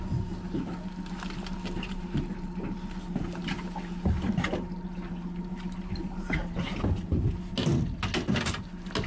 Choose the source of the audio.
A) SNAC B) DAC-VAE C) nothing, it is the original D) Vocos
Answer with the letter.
C